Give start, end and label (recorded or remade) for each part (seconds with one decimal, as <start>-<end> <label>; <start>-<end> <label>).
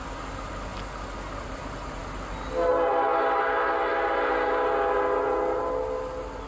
0.0-6.5 recorded